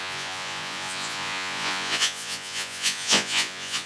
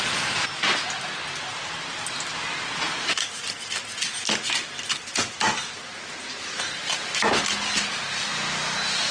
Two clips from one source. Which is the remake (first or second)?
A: first